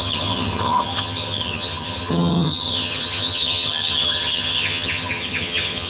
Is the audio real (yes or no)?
no